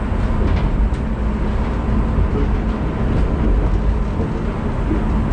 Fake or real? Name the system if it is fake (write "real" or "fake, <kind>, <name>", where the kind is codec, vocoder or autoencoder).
real